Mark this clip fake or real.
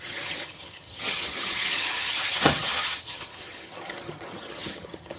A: fake